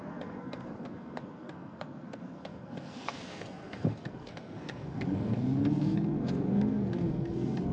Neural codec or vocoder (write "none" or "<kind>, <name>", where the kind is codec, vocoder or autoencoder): codec, SNAC